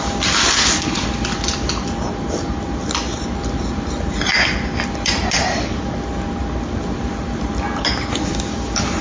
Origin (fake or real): real